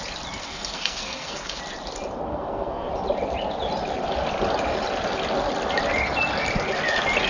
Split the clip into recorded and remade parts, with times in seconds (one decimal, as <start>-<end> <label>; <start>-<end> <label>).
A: 0.0-0.4 recorded; 0.4-1.6 remade; 1.6-2.3 recorded; 2.3-2.9 remade; 2.9-7.3 recorded